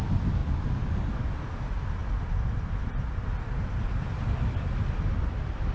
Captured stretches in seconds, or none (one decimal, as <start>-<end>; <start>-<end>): 0.0-0.4; 1.2-5.7